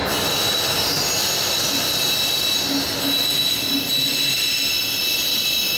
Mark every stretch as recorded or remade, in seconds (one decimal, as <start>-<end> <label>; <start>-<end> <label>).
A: 0.0-5.8 recorded